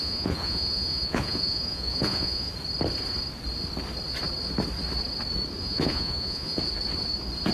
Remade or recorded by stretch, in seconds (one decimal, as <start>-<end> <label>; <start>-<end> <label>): 0.0-2.5 remade; 2.5-5.6 recorded; 5.6-6.6 remade; 6.6-7.5 recorded